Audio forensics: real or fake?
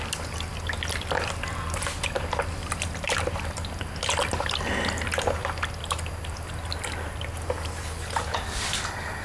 real